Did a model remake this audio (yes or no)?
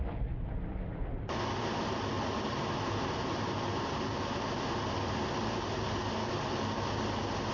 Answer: no